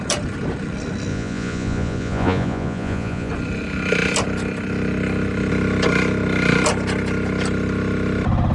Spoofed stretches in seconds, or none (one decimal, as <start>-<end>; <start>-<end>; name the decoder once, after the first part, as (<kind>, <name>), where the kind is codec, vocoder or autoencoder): 1.1-3.3 (vocoder, Vocos)